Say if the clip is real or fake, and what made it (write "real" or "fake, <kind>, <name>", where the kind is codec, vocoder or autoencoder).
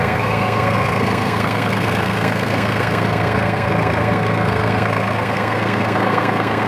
fake, codec, SNAC